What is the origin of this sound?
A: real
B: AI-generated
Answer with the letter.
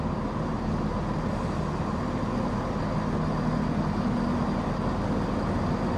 A